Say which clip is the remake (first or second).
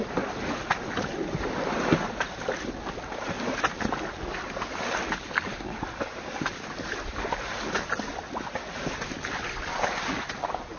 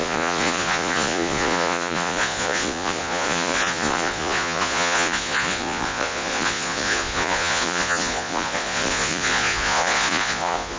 second